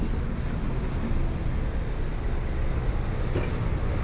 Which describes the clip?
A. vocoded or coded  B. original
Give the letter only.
B